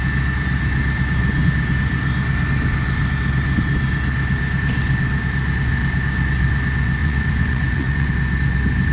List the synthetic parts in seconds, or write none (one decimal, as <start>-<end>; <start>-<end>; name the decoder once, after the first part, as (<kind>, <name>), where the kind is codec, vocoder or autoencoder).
7.0-8.1 (vocoder, Vocos)